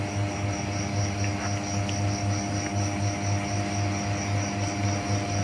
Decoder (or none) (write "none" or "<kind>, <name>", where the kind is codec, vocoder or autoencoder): none